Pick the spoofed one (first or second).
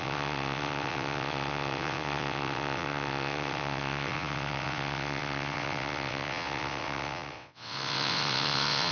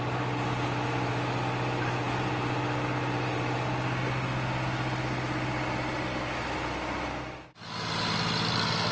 first